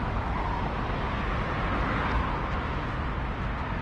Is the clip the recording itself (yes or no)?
yes